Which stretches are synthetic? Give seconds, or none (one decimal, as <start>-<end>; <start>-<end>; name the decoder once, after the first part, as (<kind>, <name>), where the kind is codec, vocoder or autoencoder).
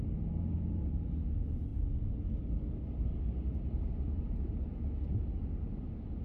none